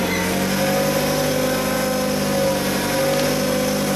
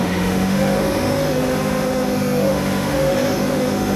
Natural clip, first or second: first